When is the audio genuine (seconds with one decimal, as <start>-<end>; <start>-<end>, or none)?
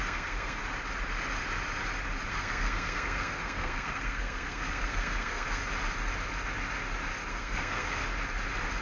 0.6-2.3; 5.6-7.3; 8.0-8.8